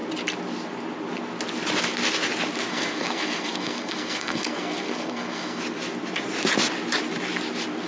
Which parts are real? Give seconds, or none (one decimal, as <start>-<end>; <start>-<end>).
0.0-2.7; 5.6-7.9